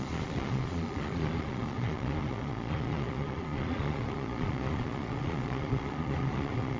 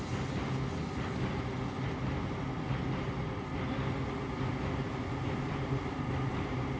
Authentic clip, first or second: second